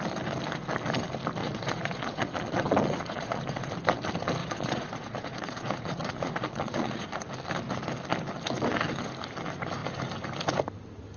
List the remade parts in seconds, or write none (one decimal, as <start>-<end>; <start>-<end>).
1.4-3.7; 4.4-7.2